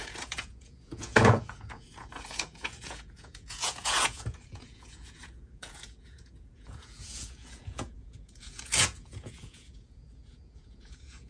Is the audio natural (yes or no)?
no